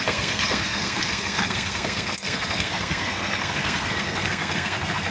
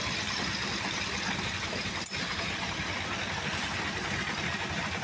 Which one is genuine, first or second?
second